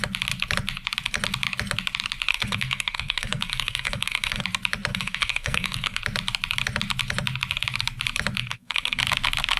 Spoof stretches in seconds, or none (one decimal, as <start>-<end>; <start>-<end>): 2.3-4.4; 4.9-6.0; 8.4-9.0